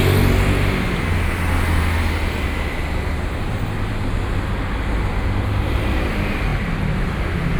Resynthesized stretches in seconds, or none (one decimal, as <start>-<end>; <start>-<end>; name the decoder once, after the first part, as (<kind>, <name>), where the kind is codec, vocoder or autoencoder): none

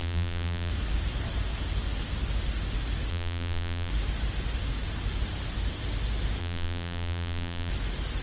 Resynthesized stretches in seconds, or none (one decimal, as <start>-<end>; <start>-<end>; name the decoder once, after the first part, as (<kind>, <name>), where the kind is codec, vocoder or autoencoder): 0.0-0.7 (vocoder, BigVGAN v2); 3.1-3.9; 6.4-7.7

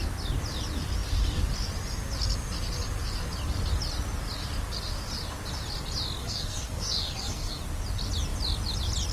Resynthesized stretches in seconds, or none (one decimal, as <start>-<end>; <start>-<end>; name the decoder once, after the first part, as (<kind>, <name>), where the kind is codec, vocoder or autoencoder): 6.2-7.6 (codec, SNAC)

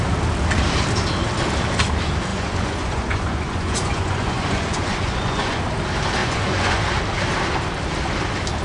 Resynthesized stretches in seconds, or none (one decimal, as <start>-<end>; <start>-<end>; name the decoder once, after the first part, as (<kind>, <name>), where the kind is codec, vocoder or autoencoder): 2.3-5.6 (vocoder, Vocos); 6.2-6.8

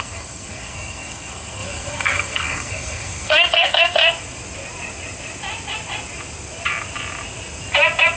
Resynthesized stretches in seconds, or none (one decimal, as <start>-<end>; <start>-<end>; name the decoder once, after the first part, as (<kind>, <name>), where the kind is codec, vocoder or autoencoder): 0.0-4.0 (codec, SNAC)

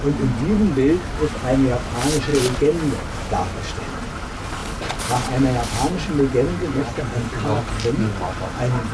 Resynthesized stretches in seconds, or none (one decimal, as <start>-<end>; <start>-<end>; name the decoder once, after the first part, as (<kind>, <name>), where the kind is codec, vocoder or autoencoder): none